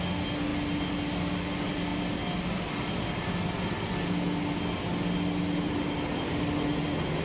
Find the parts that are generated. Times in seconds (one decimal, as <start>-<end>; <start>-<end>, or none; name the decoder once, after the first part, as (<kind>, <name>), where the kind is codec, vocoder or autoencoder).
none